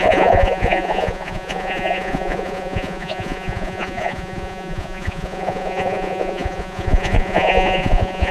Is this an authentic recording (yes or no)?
no